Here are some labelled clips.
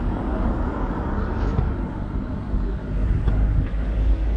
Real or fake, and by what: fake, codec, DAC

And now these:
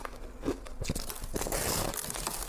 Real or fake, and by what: real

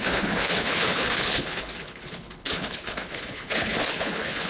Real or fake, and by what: fake, codec, HILCodec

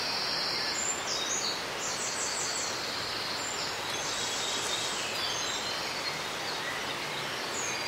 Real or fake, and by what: real